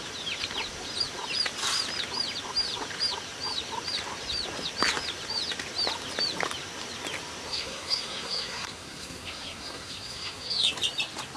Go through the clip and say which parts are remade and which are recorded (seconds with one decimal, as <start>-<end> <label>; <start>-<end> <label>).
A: 0.0-7.5 recorded; 7.5-10.7 remade; 10.7-11.4 recorded